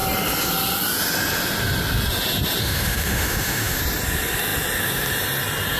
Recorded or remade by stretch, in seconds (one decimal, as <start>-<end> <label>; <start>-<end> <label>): 0.0-2.6 recorded; 2.6-3.8 remade; 3.8-5.8 recorded